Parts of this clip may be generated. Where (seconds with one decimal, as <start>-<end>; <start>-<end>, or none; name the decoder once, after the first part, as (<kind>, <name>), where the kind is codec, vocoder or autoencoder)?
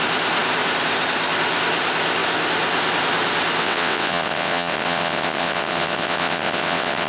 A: 3.6-7.1 (vocoder, WaveNeXt)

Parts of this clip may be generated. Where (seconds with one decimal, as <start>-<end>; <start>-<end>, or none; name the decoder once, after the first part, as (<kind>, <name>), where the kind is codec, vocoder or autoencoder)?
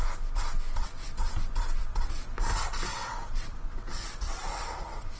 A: 0.8-1.3 (vocoder, WaveNeXt); 1.8-2.4; 2.9-5.2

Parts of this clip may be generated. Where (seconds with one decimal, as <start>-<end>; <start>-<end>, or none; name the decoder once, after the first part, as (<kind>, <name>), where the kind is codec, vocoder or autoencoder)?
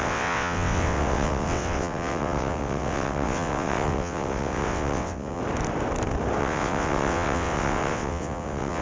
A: 0.0-5.4 (vocoder, WaveNeXt); 6.4-8.8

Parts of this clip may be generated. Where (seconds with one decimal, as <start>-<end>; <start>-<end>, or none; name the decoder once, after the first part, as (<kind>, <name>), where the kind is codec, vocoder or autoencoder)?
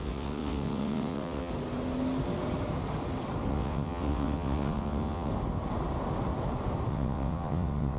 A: 0.0-1.5 (vocoder, WaveNeXt); 3.5-5.3; 6.9-8.0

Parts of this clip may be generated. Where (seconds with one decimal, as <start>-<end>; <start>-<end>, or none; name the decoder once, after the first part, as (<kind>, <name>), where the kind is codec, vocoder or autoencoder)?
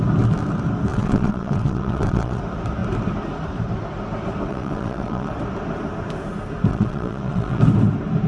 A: 0.9-2.4 (vocoder, WaveNeXt); 4.5-5.3; 6.7-7.6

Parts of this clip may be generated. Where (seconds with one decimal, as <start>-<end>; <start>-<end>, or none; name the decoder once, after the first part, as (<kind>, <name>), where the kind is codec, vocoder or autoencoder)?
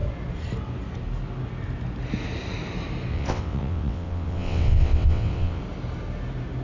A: 3.1-5.6 (vocoder, WaveNeXt)